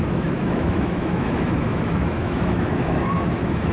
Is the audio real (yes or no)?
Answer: no